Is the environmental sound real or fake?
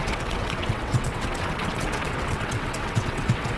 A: fake